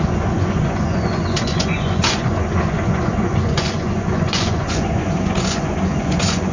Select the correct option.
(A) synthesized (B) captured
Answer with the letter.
A